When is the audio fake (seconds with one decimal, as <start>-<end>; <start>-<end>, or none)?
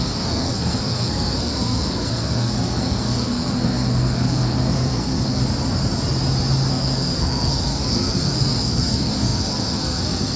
0.0-5.4; 6.7-10.4